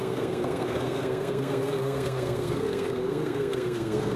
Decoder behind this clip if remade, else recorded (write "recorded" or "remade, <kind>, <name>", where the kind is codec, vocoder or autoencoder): remade, codec, SNAC